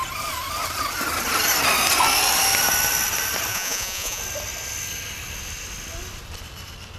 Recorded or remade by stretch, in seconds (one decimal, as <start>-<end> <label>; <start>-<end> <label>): 0.0-3.5 recorded; 3.5-4.2 remade; 4.2-7.0 recorded